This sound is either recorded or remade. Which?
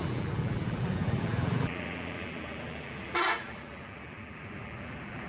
remade